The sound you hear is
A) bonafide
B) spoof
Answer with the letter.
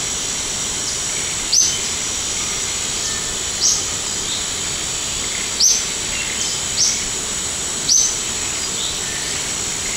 A